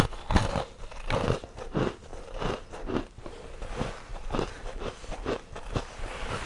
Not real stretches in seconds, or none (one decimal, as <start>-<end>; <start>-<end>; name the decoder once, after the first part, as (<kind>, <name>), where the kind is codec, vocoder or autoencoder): 2.1-2.7 (vocoder, BigVGAN v2); 4.1-5.1